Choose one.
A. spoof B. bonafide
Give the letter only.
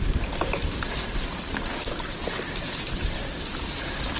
B